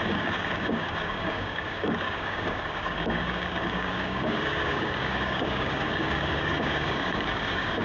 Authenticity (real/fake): fake